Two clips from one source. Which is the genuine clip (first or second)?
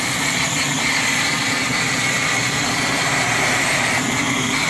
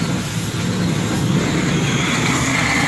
second